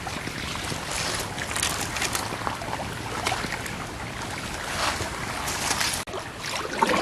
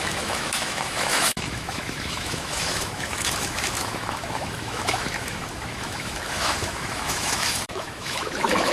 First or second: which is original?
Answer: first